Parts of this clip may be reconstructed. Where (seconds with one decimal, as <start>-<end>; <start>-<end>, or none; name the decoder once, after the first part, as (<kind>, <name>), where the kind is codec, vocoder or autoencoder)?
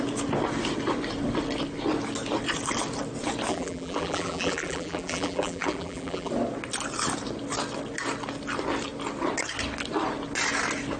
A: 3.5-6.3 (vocoder, BigVGAN v2)